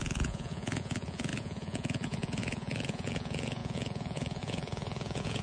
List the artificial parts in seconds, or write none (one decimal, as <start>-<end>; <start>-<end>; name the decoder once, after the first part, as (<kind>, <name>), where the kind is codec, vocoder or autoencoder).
0.0-5.4 (vocoder, Vocos)